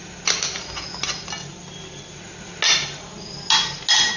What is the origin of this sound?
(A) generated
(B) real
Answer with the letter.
B